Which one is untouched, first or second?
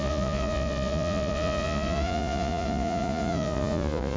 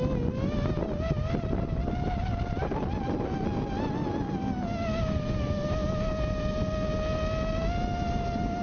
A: second